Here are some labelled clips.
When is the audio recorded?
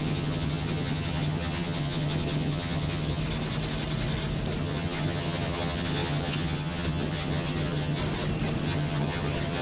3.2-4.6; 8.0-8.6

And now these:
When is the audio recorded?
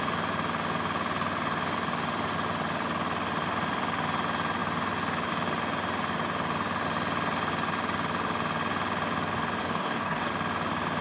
0.0-9.6; 10.3-11.0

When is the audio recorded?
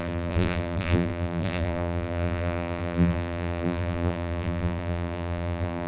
none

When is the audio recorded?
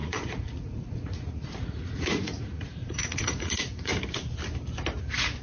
3.9-5.0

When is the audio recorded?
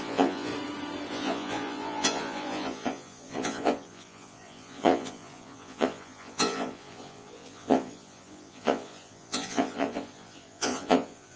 0.5-1.1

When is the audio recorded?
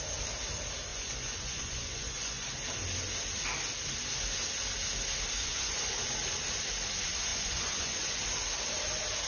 0.0-0.9; 2.5-5.4; 6.1-7.3; 8.2-9.3